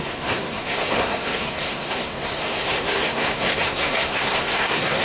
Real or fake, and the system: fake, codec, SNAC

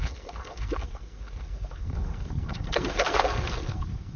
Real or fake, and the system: fake, codec, SNAC